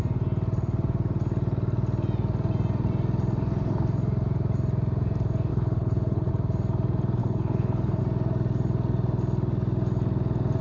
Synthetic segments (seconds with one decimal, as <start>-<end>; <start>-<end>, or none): 5.5-6.3; 7.2-8.0